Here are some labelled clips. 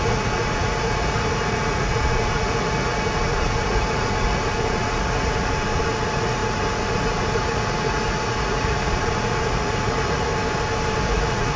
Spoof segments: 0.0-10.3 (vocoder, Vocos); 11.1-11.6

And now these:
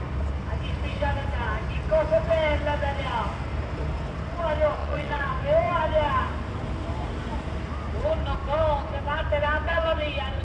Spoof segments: 4.8-5.3 (vocoder, Vocos)

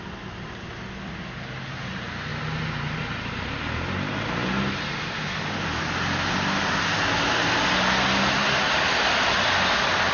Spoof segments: none

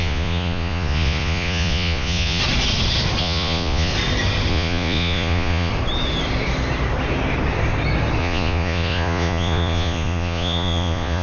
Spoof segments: 0.0-2.4 (vocoder, Vocos); 3.2-3.9; 4.5-5.7; 8.2-11.2

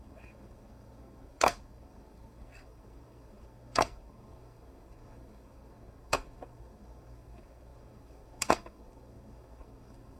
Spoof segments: 0.0-10.2 (codec, SNAC)